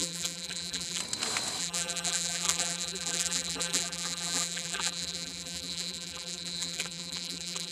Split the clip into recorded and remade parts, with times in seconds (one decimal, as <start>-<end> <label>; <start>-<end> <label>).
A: 0.0-1.0 remade; 1.0-1.6 recorded; 1.6-7.7 remade